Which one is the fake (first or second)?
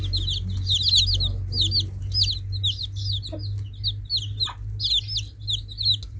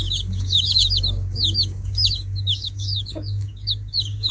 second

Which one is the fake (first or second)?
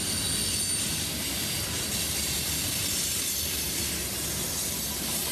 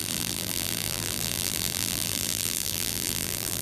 second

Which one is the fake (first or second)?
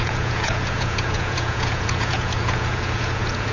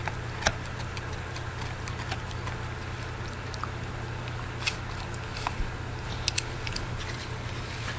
first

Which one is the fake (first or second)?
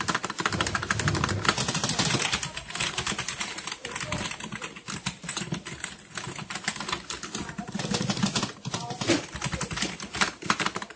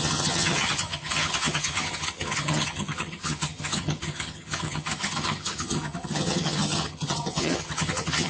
second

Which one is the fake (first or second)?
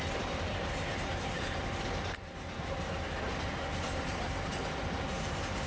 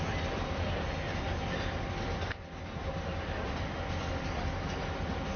first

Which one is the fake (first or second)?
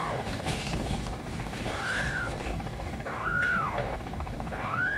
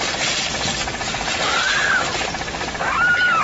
first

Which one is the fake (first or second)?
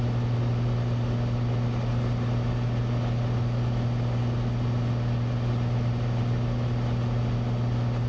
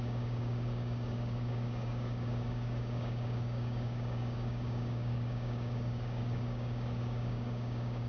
second